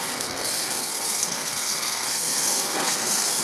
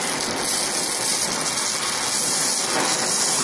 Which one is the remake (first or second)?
first